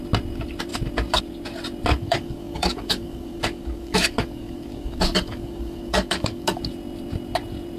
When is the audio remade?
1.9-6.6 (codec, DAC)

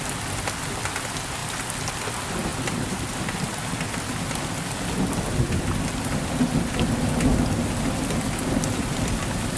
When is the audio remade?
none

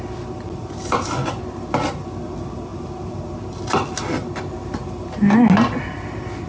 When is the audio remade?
none

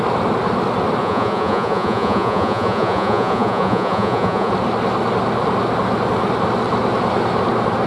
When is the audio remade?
1.0-4.5 (vocoder, Vocos)

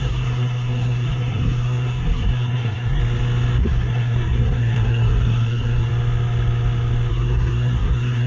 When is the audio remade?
0.0-3.0 (codec, SNAC); 3.6-5.9; 7.1-8.3

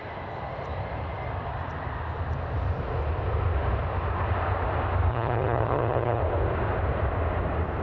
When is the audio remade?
5.1-6.2 (vocoder, HiFi-GAN)

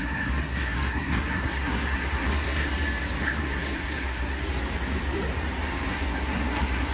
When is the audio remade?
0.0-2.7 (codec, SNAC); 3.2-4.5; 5.9-6.9

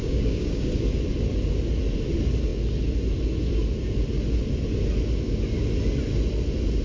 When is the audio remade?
0.0-0.7 (codec, DAC)